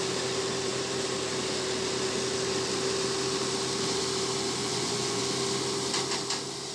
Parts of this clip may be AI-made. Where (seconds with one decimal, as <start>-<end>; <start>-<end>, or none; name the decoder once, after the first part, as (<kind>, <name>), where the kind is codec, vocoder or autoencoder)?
4.6-5.2 (vocoder, Vocos)